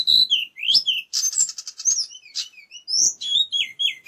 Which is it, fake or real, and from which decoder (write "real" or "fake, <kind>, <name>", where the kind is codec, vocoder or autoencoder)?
real